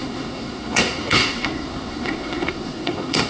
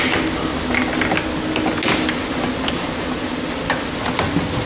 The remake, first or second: first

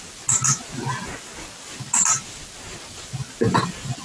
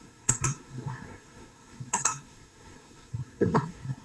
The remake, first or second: second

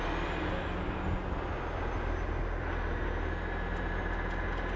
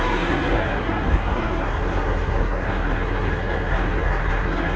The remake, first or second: second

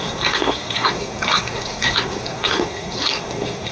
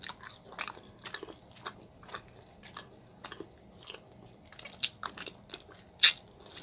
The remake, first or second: first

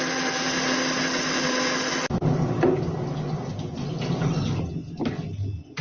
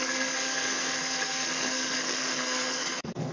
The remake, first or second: second